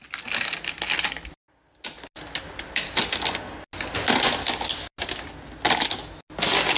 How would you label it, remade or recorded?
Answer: recorded